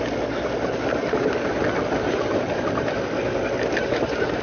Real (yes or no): yes